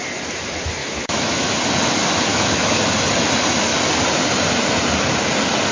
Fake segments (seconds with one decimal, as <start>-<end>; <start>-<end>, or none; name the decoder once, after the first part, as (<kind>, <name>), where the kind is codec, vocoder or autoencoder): 0.8-1.6 (autoencoder, DAC-VAE); 2.3-2.9